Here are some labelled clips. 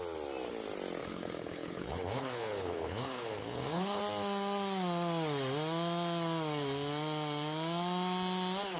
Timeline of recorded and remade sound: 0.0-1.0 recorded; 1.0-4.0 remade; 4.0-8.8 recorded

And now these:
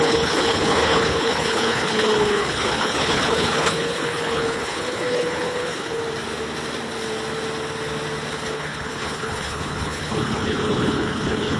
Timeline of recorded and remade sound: 0.0-6.0 remade; 6.0-8.3 recorded; 8.3-11.6 remade

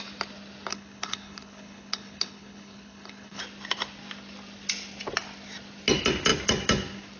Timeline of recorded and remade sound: 0.0-0.7 recorded; 0.7-3.4 remade; 3.4-7.2 recorded

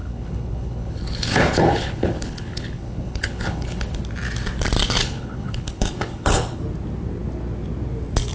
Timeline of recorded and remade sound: 0.0-4.0 remade; 4.0-5.0 recorded; 5.0-6.6 remade; 6.6-8.3 recorded

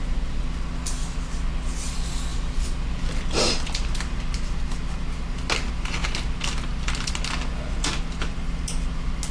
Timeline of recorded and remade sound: 0.0-9.3 recorded

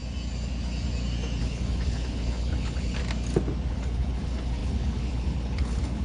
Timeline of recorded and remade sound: 0.0-1.4 recorded; 1.4-3.0 remade; 3.0-3.7 recorded; 3.7-6.0 remade